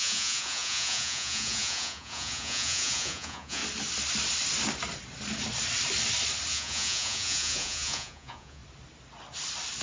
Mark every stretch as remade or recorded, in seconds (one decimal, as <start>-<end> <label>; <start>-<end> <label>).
0.0-3.6 remade; 3.6-6.5 recorded; 6.5-8.6 remade; 8.6-9.8 recorded